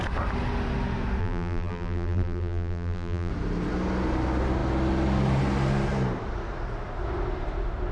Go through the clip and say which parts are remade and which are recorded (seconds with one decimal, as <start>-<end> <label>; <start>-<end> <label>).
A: 0.0-1.2 recorded; 1.2-3.3 remade; 3.3-7.9 recorded